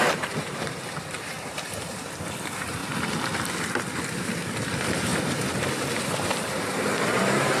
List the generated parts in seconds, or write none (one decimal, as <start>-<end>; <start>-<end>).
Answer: 0.0-2.8; 4.1-7.6